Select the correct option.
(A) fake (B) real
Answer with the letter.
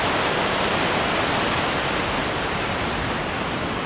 B